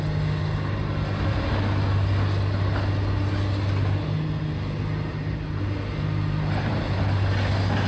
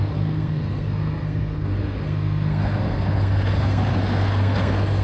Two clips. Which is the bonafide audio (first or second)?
first